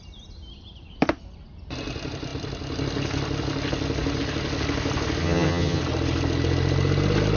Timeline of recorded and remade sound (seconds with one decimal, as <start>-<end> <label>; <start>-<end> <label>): 0.0-5.2 recorded; 5.2-5.8 remade; 5.8-7.4 recorded